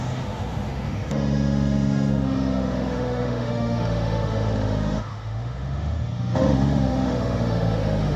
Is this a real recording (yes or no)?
no